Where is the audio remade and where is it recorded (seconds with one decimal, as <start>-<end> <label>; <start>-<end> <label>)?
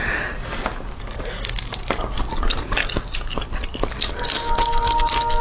0.0-5.4 recorded